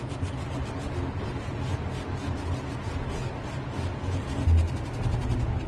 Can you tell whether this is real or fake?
real